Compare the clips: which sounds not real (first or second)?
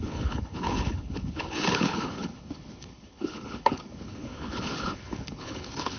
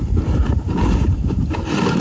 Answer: first